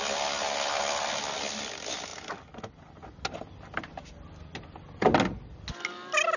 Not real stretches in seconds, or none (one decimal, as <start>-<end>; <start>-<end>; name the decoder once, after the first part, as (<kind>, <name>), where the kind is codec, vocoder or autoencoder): none